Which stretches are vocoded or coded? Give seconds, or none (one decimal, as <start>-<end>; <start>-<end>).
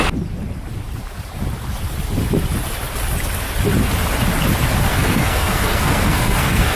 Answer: 4.9-6.8